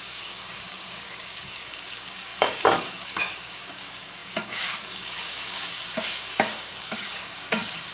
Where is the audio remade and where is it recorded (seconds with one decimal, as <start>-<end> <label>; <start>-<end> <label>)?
0.0-7.9 remade

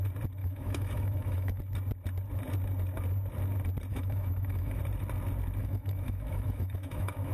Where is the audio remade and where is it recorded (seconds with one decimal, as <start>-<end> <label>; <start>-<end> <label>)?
0.0-0.4 recorded; 0.4-1.6 remade; 1.6-3.9 recorded; 3.9-4.8 remade; 4.8-5.6 recorded; 5.6-7.3 remade

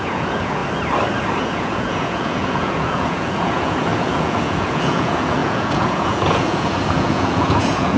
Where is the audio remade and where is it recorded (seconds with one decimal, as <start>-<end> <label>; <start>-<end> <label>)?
0.0-0.6 remade; 0.6-1.4 recorded; 1.4-8.0 remade

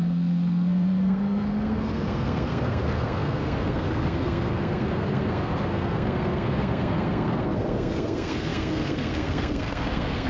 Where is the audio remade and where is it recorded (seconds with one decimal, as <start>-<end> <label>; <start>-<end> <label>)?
0.0-10.3 remade

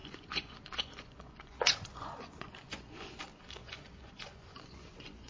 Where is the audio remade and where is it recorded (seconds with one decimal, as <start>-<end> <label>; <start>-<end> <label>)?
0.0-3.2 remade; 3.2-3.6 recorded; 3.6-5.3 remade